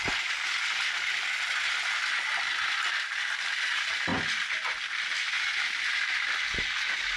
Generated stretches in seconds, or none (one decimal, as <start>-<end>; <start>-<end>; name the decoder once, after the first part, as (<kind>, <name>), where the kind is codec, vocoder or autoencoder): none